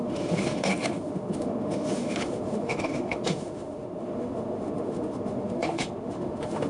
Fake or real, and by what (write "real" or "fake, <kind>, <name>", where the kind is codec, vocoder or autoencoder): fake, autoencoder, DAC-VAE